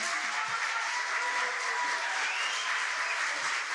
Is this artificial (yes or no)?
no